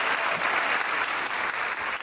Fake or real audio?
real